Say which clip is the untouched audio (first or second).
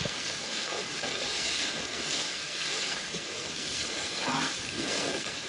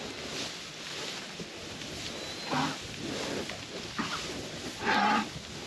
second